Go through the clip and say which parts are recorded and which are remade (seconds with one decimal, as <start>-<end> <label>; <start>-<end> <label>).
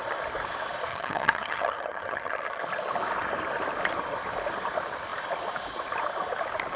0.0-0.9 recorded; 0.9-2.6 remade; 2.6-6.8 recorded